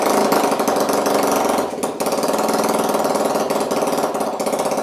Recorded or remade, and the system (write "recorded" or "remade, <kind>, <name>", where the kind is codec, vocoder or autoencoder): recorded